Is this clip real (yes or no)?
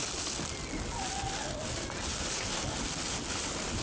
yes